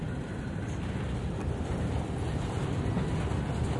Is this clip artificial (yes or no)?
no